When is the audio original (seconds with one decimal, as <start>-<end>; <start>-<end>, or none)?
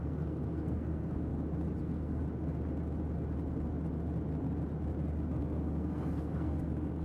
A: 1.3-1.8; 2.2-5.4